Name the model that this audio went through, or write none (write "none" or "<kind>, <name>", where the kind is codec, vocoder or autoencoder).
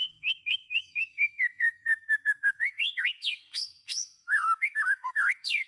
codec, SNAC